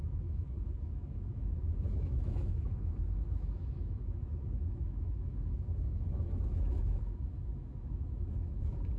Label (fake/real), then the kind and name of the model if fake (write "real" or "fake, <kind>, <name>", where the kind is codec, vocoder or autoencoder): fake, autoencoder, DAC-VAE